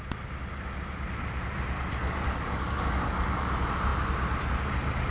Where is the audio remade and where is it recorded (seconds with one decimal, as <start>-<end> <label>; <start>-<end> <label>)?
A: 0.0-2.0 recorded; 2.0-3.5 remade; 3.5-5.1 recorded